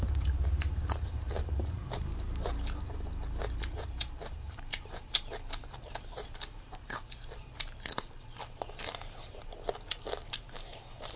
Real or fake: fake